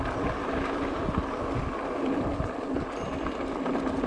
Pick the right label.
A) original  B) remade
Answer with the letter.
A